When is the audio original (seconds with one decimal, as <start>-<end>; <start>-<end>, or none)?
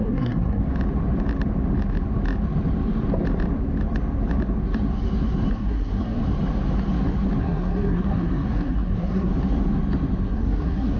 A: 0.6-5.5; 6.2-7.4; 9.3-10.2